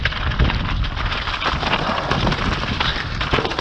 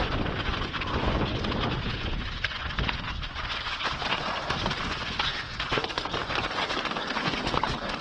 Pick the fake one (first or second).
second